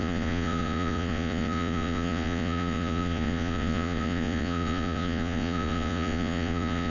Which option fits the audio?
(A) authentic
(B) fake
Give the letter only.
B